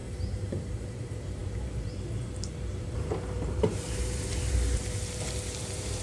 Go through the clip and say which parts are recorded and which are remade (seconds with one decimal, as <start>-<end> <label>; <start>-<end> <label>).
0.0-6.0 remade